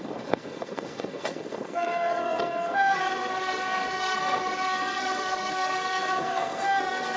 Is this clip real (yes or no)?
no